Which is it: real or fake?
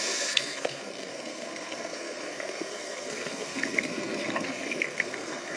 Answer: fake